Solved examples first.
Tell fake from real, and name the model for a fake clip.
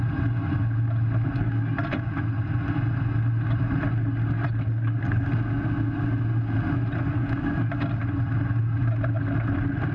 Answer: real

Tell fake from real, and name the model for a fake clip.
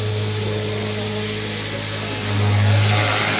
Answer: real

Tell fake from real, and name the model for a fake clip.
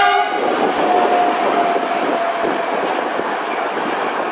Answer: real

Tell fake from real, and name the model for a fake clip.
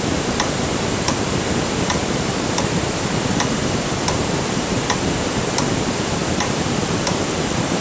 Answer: fake, vocoder, BigVGAN v2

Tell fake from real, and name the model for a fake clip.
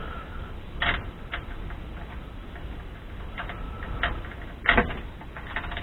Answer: real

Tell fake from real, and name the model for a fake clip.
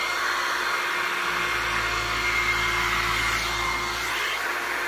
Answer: real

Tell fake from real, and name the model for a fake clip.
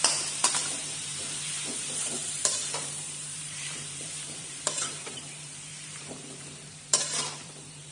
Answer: fake, vocoder, BigVGAN v2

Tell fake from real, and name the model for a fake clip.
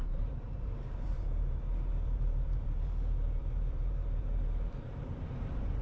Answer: fake, vocoder, BigVGAN v2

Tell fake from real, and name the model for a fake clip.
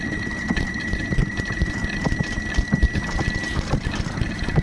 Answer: fake, vocoder, BigVGAN v2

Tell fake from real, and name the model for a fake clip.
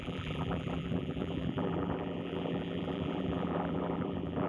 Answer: fake, vocoder, BigVGAN v2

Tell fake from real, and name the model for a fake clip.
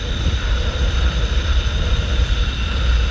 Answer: fake, vocoder, BigVGAN v2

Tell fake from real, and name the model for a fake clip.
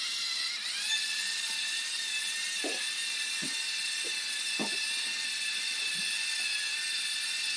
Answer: real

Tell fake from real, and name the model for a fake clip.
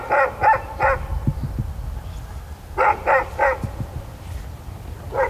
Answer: real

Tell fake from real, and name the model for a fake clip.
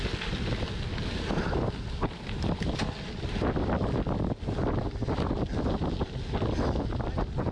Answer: real